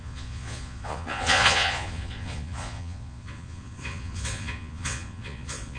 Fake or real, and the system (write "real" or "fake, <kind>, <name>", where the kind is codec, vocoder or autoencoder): fake, vocoder, Vocos